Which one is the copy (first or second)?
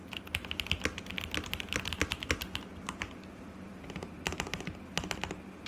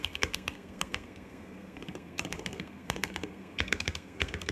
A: second